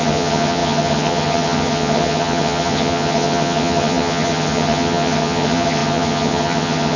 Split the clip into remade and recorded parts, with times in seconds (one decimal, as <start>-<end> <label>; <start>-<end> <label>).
0.0-7.0 remade